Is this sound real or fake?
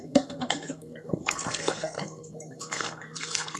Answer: fake